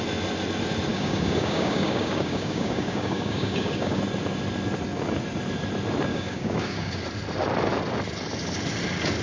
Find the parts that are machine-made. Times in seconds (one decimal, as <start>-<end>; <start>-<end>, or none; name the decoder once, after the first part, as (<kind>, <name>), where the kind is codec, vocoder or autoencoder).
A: 0.9-4.0 (codec, DAC); 6.1-7.0